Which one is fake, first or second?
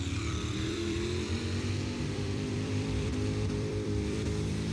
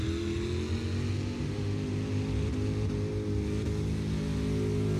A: first